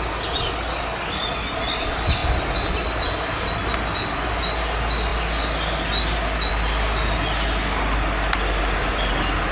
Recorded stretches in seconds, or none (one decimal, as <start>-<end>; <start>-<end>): 0.0-9.5